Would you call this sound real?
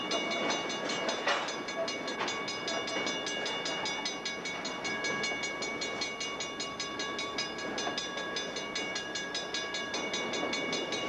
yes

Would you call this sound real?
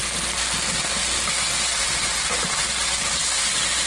yes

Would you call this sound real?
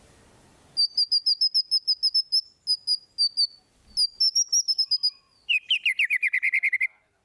yes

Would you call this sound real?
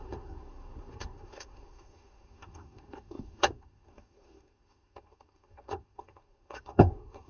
no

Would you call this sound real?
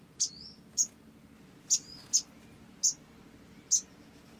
yes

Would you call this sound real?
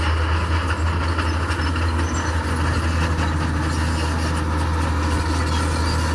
yes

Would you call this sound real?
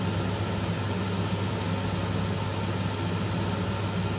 yes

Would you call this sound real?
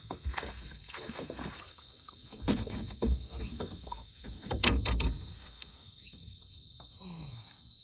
no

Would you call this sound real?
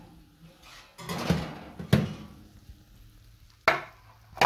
yes